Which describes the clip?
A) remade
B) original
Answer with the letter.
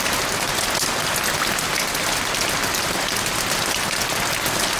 B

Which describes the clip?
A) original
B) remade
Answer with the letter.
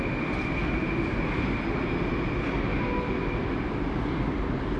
A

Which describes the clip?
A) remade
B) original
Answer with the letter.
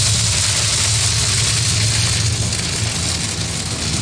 B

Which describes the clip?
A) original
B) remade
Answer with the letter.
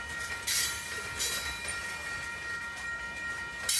A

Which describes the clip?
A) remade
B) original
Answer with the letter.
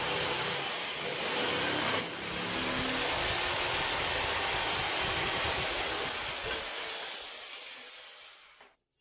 B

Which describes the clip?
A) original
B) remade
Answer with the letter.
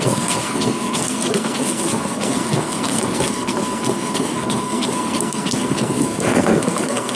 B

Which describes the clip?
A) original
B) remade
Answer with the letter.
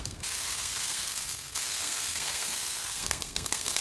B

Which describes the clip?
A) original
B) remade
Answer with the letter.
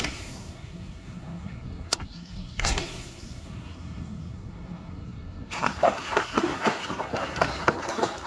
B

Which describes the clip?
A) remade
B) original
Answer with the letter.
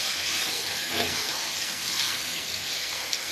A